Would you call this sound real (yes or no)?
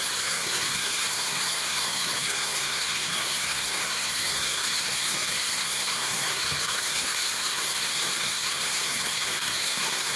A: no